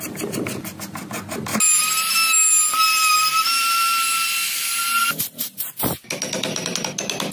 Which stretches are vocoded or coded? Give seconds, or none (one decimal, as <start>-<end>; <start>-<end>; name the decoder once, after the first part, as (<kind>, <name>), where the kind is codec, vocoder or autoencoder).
none